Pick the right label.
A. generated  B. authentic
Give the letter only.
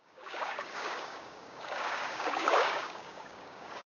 A